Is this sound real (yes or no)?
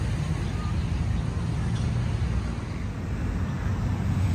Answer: yes